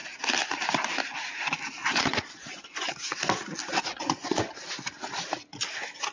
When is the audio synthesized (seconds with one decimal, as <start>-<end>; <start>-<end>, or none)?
1.8-2.9; 3.9-4.5